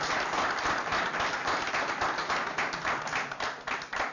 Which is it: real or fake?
real